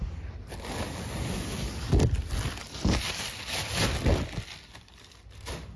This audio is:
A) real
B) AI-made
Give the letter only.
A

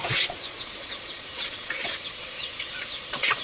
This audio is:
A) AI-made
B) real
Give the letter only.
A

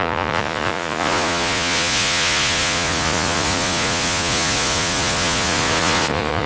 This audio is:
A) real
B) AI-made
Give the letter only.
B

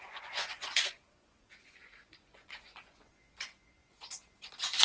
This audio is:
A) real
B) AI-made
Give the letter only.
B